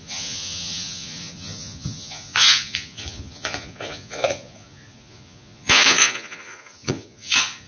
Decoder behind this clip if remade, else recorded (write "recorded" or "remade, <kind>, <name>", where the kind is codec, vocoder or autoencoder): remade, vocoder, Vocos